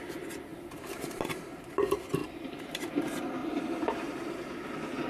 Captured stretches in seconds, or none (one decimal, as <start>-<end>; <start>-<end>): 0.0-0.5; 1.3-2.2; 2.9-3.4; 4.3-5.1